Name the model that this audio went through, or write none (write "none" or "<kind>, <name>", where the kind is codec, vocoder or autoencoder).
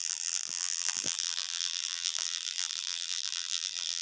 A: vocoder, BigVGAN v2